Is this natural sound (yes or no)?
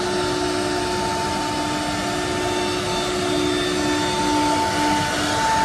yes